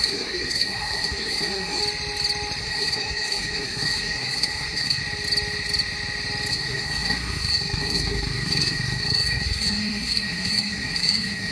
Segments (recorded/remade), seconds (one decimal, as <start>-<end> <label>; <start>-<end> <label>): 0.0-1.8 remade; 1.8-2.6 recorded; 2.6-5.0 remade; 5.0-6.5 recorded; 6.5-11.5 remade